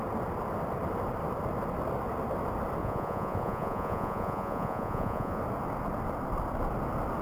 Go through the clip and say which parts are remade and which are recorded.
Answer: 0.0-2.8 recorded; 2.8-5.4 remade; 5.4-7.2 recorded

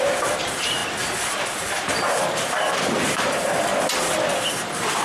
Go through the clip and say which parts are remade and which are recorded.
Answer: 0.0-0.8 remade; 0.8-1.9 recorded; 1.9-3.7 remade; 3.7-4.5 recorded; 4.5-5.0 remade

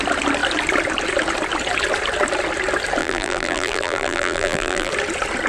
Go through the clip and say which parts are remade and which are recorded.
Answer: 0.0-3.0 recorded; 3.0-4.9 remade; 4.9-5.5 recorded

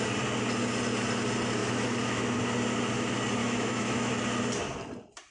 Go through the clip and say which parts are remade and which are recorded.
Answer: 0.0-1.6 recorded; 1.6-2.4 remade; 2.4-3.4 recorded; 3.4-4.1 remade; 4.1-5.3 recorded

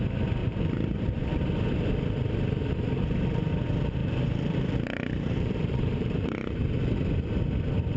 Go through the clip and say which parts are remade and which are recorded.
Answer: 0.0-0.4 recorded; 0.4-1.2 remade; 1.2-4.0 recorded; 4.0-6.8 remade; 6.8-8.0 recorded